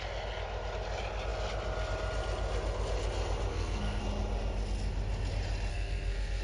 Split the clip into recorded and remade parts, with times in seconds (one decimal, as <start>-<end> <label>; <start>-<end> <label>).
0.0-3.5 recorded; 3.5-4.0 remade; 4.0-5.7 recorded; 5.7-6.4 remade